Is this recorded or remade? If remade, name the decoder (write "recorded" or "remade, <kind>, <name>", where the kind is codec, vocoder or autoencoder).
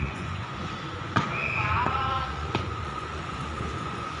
remade, vocoder, Vocos